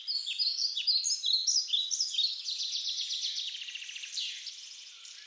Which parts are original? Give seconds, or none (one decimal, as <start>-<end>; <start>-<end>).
0.0-5.3